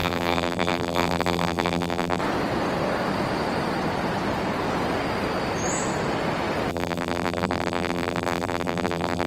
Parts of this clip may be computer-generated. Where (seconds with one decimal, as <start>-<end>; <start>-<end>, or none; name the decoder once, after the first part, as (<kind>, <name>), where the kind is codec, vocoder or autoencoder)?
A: 0.0-2.2 (vocoder, BigVGAN v2); 6.7-9.3